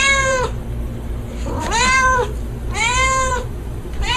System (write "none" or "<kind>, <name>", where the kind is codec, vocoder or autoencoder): vocoder, BigVGAN v2